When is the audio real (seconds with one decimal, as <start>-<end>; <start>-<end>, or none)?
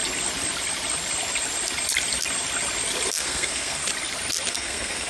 0.0-3.1; 3.8-4.5